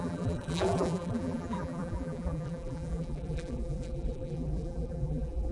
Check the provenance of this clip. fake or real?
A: fake